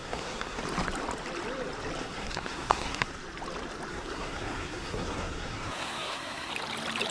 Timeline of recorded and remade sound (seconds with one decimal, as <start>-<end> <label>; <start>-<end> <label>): 0.0-0.6 remade; 0.6-2.0 recorded; 2.0-3.1 remade; 3.1-3.9 recorded; 3.9-6.5 remade; 6.5-7.1 recorded